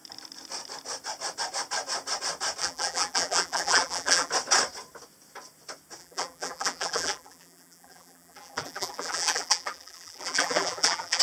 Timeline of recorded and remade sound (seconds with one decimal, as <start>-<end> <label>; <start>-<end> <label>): 0.0-2.6 recorded; 2.6-4.3 remade; 4.3-6.0 recorded; 6.0-11.2 remade